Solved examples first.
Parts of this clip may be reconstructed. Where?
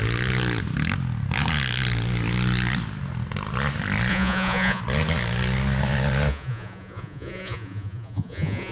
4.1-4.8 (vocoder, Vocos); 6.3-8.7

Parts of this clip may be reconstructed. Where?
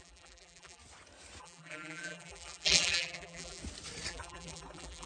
0.0-0.8 (vocoder, BigVGAN v2); 1.4-3.6; 4.1-5.1